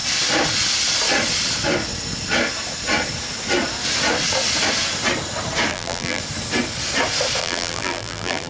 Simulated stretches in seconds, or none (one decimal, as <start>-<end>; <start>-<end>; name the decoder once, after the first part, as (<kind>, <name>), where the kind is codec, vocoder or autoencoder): 5.7-6.2 (vocoder, BigVGAN v2); 7.4-8.5